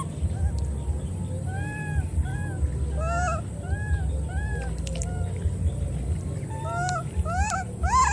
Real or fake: real